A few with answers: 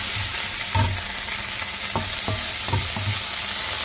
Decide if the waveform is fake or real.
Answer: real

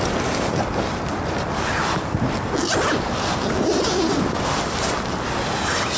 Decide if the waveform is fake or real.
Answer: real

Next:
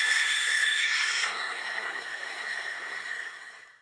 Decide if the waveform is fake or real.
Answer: fake